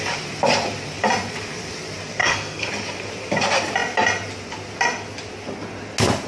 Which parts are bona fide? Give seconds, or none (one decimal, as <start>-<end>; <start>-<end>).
0.0-2.2; 2.7-6.3